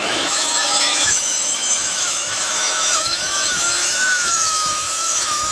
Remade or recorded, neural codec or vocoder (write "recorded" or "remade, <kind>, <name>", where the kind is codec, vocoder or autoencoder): remade, autoencoder, DAC-VAE